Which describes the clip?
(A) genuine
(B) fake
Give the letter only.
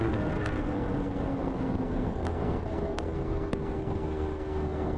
B